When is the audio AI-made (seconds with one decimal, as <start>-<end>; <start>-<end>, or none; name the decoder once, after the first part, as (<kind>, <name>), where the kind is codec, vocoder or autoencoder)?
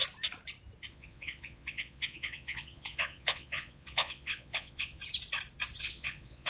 0.9-5.0 (vocoder, Vocos); 5.8-6.5